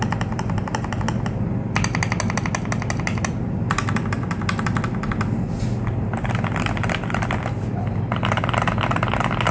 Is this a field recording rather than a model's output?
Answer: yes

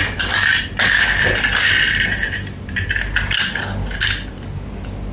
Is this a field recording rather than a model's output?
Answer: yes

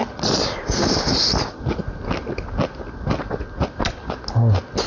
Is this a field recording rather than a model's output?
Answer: yes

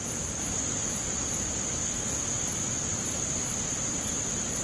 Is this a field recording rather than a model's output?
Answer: yes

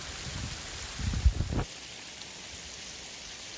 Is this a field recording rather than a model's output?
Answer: no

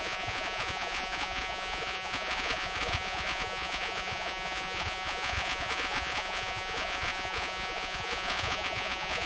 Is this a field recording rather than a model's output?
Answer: no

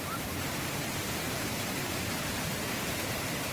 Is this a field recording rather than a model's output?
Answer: no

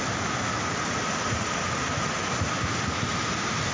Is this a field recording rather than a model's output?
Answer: yes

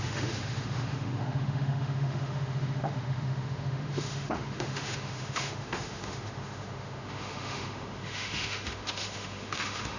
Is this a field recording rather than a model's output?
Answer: no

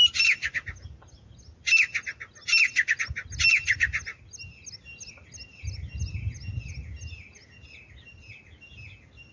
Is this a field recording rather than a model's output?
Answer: yes